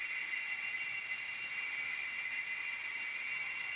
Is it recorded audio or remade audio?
recorded